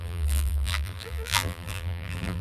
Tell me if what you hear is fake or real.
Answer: fake